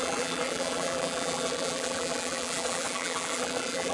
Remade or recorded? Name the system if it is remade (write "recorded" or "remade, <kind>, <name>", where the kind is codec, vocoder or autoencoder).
remade, vocoder, BigVGAN v2